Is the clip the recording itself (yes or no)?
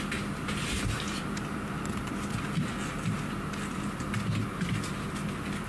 yes